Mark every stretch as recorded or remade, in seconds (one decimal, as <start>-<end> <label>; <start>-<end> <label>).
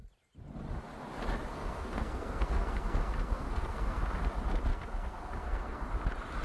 0.0-1.5 recorded; 1.5-4.0 remade; 4.0-4.7 recorded; 4.7-5.9 remade; 5.9-6.4 recorded